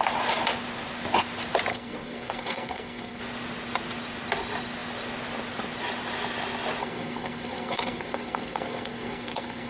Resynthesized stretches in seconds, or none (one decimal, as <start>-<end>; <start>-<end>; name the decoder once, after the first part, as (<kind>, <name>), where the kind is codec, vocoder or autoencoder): 1.7-3.2 (codec, SNAC); 6.8-9.7